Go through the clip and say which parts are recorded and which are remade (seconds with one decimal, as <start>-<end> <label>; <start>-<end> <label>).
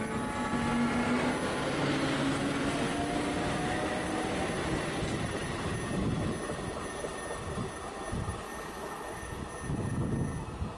0.0-8.3 recorded; 8.3-9.4 remade; 9.4-10.8 recorded